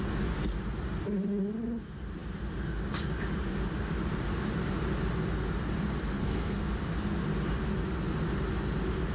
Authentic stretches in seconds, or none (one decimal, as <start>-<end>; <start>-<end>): 0.0-6.2; 6.7-9.1